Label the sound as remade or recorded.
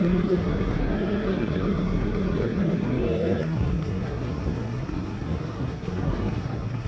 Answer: remade